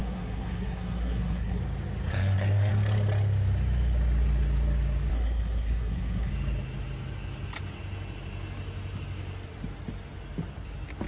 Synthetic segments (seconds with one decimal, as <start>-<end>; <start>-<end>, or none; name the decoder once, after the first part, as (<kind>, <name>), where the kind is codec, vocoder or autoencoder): 0.0-1.6 (codec, SNAC); 2.1-2.7; 5.1-6.3